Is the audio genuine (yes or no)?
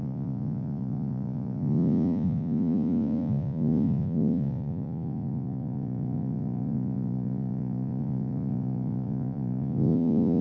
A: no